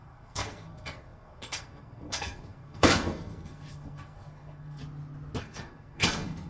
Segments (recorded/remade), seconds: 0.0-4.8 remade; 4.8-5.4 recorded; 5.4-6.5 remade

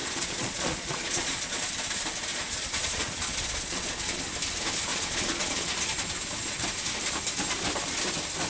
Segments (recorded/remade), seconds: 0.0-1.6 remade; 1.6-2.3 recorded; 2.3-4.2 remade; 4.2-4.9 recorded; 4.9-5.7 remade; 5.7-8.5 recorded

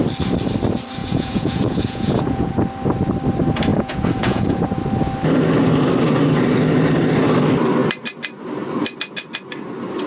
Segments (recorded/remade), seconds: 0.0-1.0 recorded; 1.0-2.5 remade; 2.5-3.7 recorded; 3.7-4.8 remade; 4.8-10.1 recorded